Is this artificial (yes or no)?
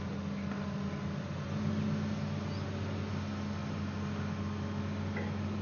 no